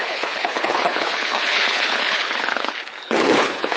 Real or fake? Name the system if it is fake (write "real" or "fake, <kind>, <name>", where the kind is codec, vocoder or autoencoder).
fake, codec, HILCodec